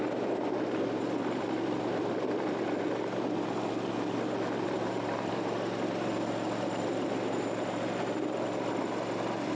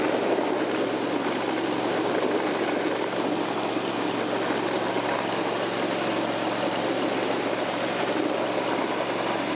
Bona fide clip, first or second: second